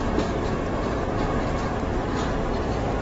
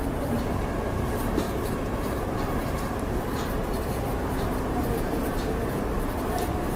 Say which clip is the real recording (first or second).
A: first